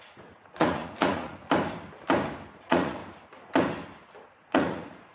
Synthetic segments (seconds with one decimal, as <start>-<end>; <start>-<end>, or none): 0.0-1.4; 2.6-3.0; 4.3-5.1